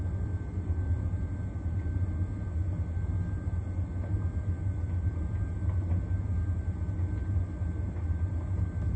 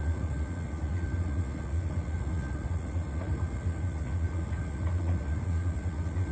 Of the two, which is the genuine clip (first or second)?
first